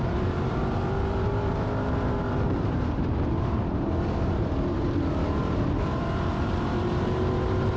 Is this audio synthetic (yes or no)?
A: yes